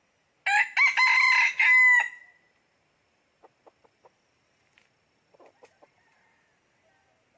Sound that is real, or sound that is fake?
real